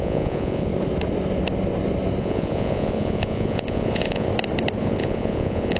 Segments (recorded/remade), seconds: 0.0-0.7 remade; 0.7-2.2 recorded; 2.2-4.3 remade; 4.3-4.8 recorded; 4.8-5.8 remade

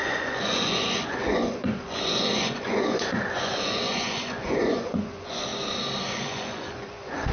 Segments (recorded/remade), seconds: 0.0-5.5 remade; 5.5-6.0 recorded; 6.0-7.3 remade